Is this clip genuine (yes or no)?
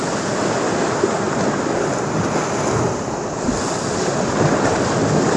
yes